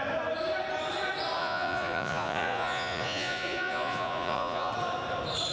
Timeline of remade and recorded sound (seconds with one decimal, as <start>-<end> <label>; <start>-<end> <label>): 0.0-1.4 recorded; 1.4-4.7 remade; 4.7-5.5 recorded